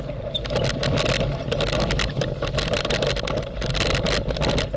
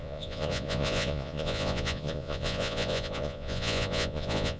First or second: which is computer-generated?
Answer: second